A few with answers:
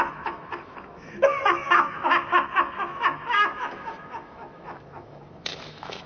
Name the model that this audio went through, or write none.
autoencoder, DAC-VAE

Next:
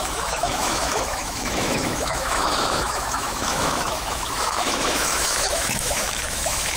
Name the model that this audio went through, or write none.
autoencoder, DAC-VAE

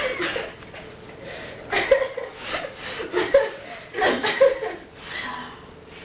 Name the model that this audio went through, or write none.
none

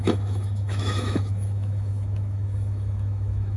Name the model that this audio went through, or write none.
autoencoder, DAC-VAE